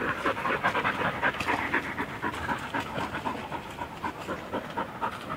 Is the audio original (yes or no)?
yes